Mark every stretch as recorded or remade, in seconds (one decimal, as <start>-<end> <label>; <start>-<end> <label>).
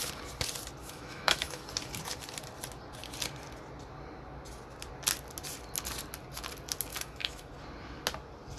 0.0-0.8 recorded; 0.8-1.6 remade; 1.6-6.9 recorded; 6.9-7.5 remade; 7.5-8.6 recorded